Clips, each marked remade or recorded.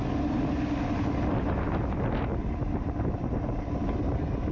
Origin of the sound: recorded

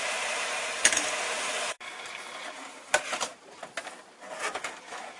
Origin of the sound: remade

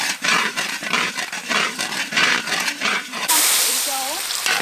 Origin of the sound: remade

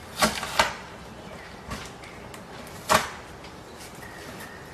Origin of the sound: remade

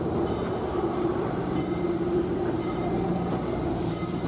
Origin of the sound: remade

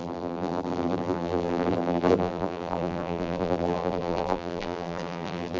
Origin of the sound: remade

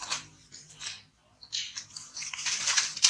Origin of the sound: recorded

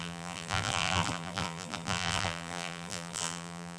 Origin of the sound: remade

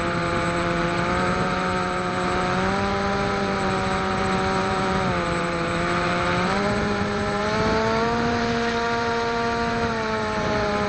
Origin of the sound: remade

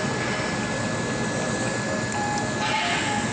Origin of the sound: recorded